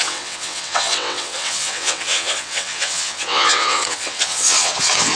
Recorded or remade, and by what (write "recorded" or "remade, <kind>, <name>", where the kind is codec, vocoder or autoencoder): remade, vocoder, WaveNeXt